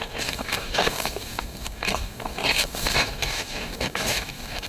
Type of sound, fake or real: fake